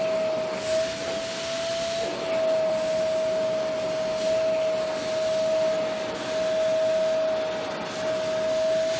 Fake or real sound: real